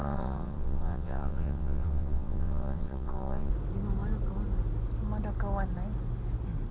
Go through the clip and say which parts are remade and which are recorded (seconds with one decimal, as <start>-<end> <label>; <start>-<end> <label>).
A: 0.0-3.5 remade; 3.5-6.7 recorded